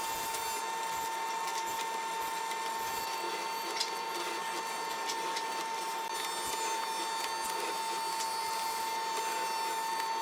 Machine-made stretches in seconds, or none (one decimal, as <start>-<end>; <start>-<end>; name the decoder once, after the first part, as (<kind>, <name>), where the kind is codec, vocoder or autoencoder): none